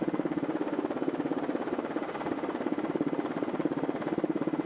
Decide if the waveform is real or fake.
real